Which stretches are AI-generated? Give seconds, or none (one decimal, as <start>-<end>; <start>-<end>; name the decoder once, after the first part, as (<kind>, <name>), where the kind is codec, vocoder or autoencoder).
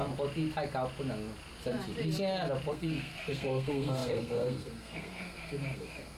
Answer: 2.7-6.2 (codec, SNAC)